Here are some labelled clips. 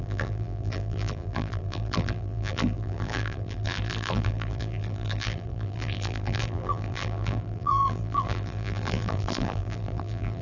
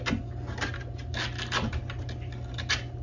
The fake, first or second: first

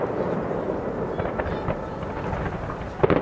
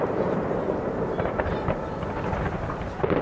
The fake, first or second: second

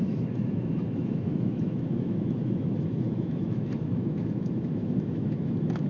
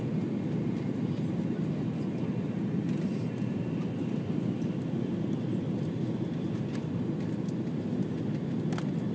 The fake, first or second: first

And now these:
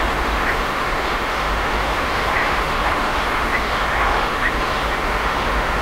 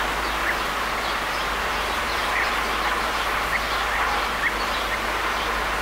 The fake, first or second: first